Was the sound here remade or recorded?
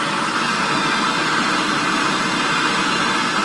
recorded